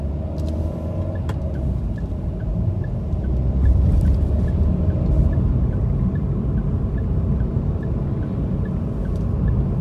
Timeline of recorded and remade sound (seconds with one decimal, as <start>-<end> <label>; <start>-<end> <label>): 0.0-2.5 recorded; 2.5-3.3 remade; 3.3-9.8 recorded